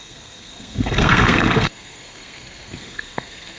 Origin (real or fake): fake